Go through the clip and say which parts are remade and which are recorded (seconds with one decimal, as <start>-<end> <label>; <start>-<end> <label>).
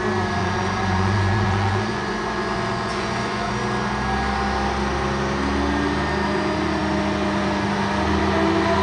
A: 0.0-0.4 recorded; 0.4-3.5 remade; 3.5-8.8 recorded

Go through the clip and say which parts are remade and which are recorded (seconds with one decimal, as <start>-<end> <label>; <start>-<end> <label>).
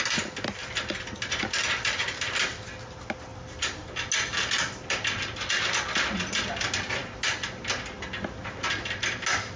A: 0.0-9.6 recorded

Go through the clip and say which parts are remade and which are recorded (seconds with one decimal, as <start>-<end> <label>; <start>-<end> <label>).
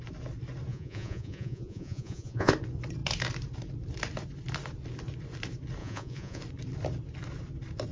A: 0.0-0.7 recorded; 0.7-2.5 remade; 2.5-5.8 recorded; 5.8-6.4 remade; 6.4-7.9 recorded